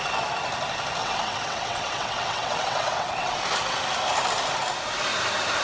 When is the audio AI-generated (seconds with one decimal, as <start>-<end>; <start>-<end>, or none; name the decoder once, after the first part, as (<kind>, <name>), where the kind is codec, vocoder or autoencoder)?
1.0-3.4 (vocoder, WaveNeXt)